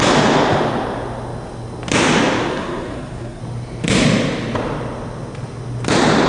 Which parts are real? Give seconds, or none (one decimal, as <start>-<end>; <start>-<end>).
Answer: 0.0-2.5; 3.4-6.3